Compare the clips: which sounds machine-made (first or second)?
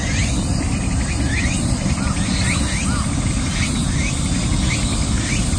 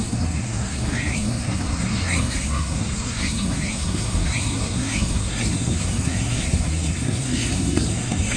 second